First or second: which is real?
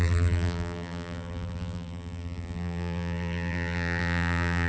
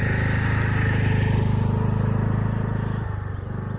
second